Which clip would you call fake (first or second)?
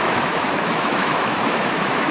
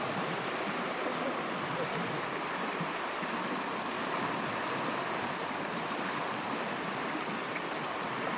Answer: first